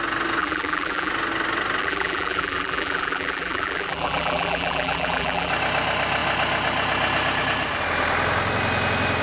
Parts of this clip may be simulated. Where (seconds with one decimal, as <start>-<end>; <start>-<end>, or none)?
0.4-1.1; 1.8-5.5